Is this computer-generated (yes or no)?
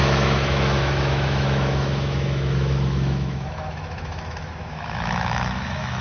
yes